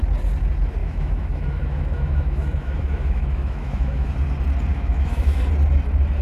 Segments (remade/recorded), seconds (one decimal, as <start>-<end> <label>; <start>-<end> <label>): 0.0-0.8 recorded; 0.8-4.1 remade; 4.1-4.7 recorded; 4.7-5.4 remade; 5.4-6.2 recorded